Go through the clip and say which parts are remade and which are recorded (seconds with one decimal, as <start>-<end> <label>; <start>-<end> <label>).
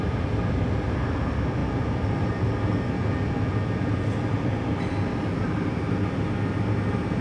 0.0-7.2 recorded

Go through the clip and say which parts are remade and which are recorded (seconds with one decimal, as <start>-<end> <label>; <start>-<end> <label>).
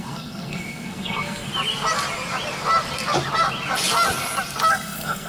0.0-1.5 remade; 1.5-4.7 recorded; 4.7-5.3 remade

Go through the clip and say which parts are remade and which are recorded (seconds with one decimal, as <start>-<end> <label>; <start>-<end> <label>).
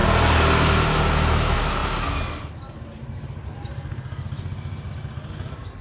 0.0-5.8 recorded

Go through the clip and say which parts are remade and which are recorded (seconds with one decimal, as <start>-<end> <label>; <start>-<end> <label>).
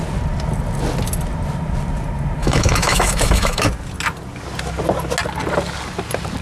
0.0-2.4 recorded; 2.4-3.6 remade; 3.6-6.4 recorded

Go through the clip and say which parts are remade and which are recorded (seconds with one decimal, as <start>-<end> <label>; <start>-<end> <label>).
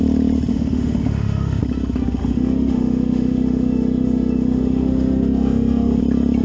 0.0-0.5 recorded; 0.5-1.6 remade; 1.6-2.2 recorded; 2.2-6.0 remade; 6.0-6.4 recorded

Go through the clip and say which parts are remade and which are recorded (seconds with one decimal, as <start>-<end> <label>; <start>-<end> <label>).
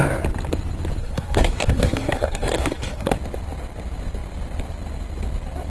0.0-1.0 recorded; 1.0-3.1 remade; 3.1-5.7 recorded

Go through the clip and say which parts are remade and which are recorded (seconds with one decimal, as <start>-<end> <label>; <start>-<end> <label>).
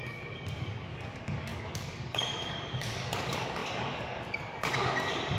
0.0-5.4 remade